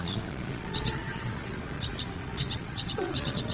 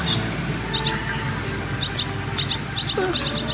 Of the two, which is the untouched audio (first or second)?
second